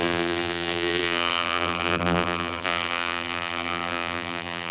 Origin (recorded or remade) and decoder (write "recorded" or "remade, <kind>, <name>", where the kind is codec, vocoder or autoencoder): remade, vocoder, BigVGAN v2